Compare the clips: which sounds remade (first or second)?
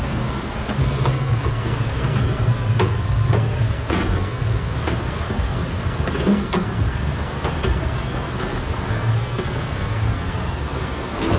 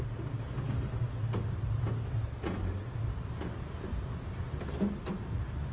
first